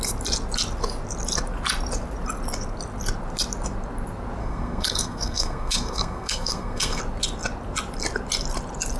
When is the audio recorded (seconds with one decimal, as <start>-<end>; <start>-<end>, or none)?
0.0-4.4; 7.0-9.0